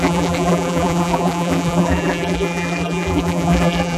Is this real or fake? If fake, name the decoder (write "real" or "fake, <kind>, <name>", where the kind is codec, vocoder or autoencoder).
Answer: fake, vocoder, BigVGAN v2